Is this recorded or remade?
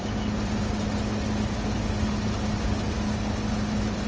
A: recorded